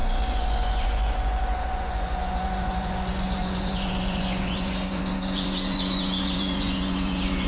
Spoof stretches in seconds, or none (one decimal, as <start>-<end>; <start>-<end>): 0.0-7.5